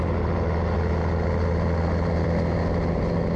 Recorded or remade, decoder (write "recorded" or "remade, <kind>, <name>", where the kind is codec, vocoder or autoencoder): recorded